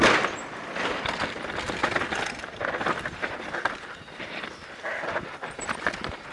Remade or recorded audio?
recorded